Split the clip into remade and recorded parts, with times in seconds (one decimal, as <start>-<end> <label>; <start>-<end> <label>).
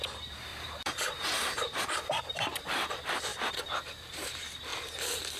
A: 0.0-3.3 remade; 3.3-3.9 recorded; 3.9-4.7 remade; 4.7-5.4 recorded